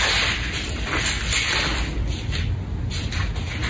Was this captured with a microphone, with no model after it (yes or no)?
yes